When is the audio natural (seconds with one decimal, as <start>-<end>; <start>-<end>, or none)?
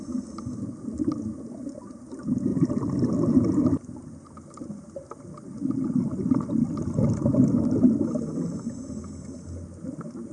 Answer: 0.0-10.3